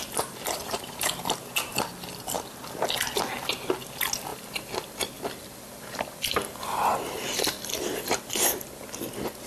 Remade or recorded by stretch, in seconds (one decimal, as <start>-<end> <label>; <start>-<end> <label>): 0.0-4.3 recorded; 4.3-8.9 remade; 8.9-9.5 recorded

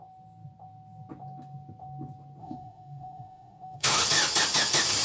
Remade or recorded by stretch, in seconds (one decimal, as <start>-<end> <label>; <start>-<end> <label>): 0.0-2.4 recorded; 2.4-4.0 remade; 4.0-5.0 recorded

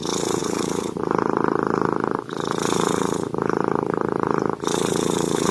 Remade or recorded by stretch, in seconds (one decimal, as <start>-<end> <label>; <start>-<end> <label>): 0.0-0.4 recorded; 0.4-1.0 remade; 1.0-2.0 recorded; 2.0-5.5 remade

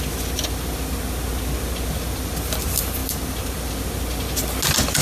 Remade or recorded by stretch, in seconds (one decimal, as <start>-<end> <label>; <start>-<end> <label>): 0.0-5.0 recorded

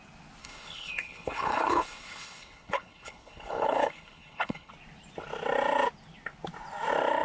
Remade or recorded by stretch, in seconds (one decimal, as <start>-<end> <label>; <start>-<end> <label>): 0.0-0.4 recorded; 0.4-4.7 remade; 4.7-7.2 recorded